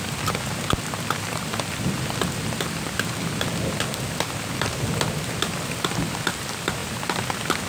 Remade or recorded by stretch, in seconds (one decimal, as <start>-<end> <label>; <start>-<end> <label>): 0.0-7.7 recorded